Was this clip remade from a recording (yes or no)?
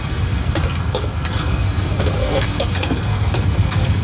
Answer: yes